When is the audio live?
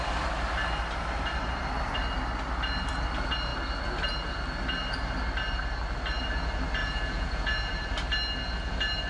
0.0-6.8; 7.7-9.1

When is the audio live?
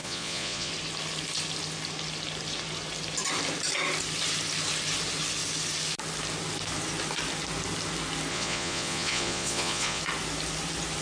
0.7-8.3; 10.0-11.0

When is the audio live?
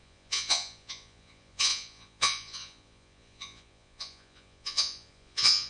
none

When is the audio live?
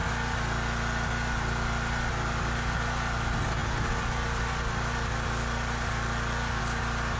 0.0-7.2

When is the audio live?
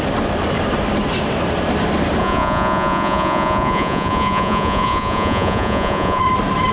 0.0-2.2; 6.2-6.7